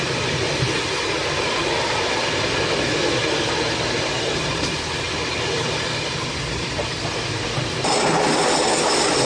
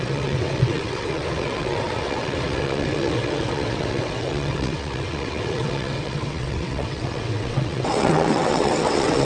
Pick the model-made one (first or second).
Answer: second